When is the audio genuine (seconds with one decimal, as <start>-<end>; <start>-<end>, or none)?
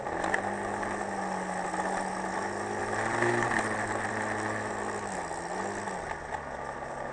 0.0-7.1